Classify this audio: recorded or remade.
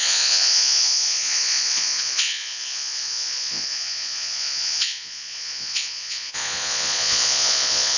remade